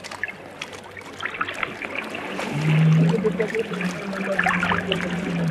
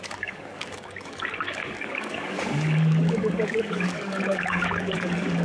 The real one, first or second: first